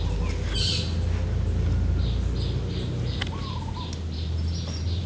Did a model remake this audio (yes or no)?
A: no